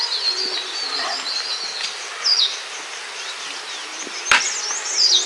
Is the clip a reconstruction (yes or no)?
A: no